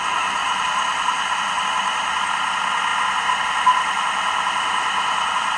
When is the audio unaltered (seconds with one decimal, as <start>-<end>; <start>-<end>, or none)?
0.0-0.4; 1.6-5.6